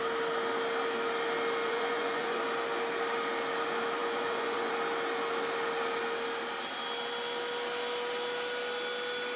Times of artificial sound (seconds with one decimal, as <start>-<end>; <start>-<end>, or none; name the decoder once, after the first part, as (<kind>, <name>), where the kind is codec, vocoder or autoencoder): 1.7-2.4 (vocoder, Vocos); 4.0-4.7